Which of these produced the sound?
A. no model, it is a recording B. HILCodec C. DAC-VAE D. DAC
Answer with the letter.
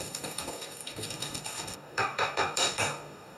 D